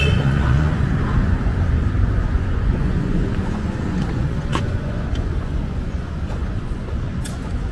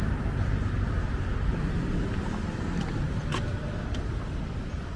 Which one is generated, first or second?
first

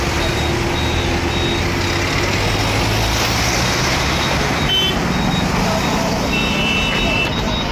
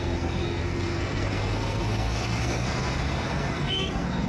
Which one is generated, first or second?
second